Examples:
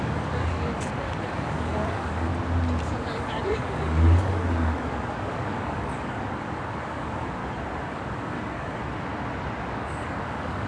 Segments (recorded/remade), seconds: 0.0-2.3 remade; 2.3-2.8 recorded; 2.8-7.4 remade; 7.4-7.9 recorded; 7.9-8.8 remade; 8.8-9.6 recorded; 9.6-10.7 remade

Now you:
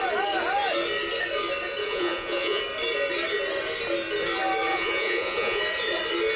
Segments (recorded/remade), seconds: 0.0-1.8 recorded; 1.8-2.6 remade; 2.6-4.7 recorded; 4.7-5.6 remade; 5.6-6.4 recorded

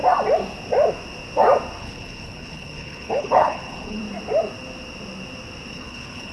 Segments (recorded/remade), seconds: 0.0-1.8 recorded; 1.8-4.0 remade; 4.0-5.7 recorded; 5.7-6.3 remade

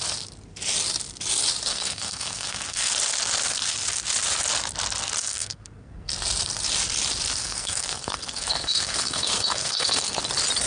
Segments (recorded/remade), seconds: 0.0-1.7 recorded; 1.7-2.9 remade; 2.9-5.2 recorded; 5.2-6.1 remade; 6.1-7.4 recorded; 7.4-10.2 remade; 10.2-10.7 recorded

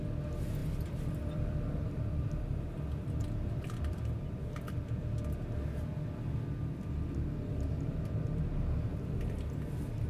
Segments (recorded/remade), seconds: 0.0-0.6 recorded; 0.6-5.0 remade; 5.0-10.1 recorded

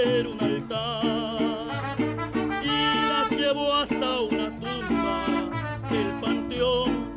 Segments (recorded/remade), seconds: 0.0-7.2 recorded

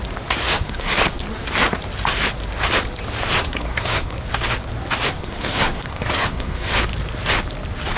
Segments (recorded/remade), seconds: 0.0-0.4 recorded; 0.4-1.0 remade; 1.0-3.3 recorded; 3.3-4.2 remade; 4.2-5.2 recorded; 5.2-6.7 remade; 6.7-8.0 recorded

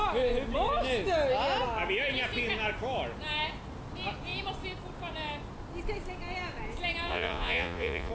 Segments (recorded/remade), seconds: 0.0-7.1 recorded; 7.1-8.1 remade